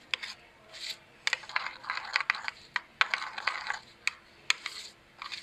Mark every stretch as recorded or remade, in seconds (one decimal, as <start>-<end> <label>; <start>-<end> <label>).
0.0-5.4 recorded